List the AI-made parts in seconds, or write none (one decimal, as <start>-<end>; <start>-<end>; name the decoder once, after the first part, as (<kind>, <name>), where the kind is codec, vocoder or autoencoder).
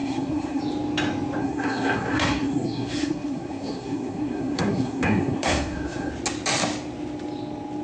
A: 0.0-0.6 (codec, SNAC); 1.4-6.1